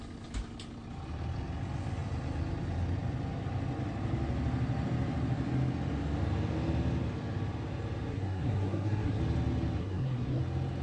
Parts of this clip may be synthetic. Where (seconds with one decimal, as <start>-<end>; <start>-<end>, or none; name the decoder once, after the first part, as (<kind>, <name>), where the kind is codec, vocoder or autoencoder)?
8.1-9.2 (codec, SNAC); 9.8-10.4